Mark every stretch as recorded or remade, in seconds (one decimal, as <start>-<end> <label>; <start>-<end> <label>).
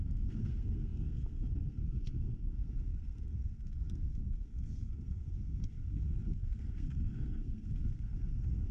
0.0-8.7 remade